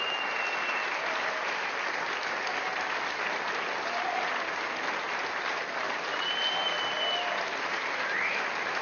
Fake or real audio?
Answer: real